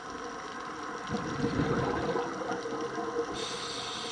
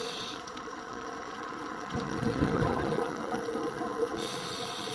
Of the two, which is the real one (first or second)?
first